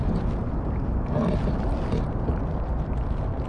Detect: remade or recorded recorded